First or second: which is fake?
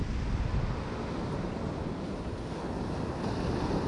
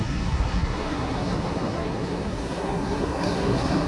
second